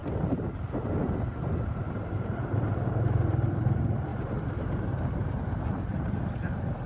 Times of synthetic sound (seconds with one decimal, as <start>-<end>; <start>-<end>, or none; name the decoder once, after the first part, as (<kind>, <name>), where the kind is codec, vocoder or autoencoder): 1.0-6.9 (vocoder, BigVGAN v2)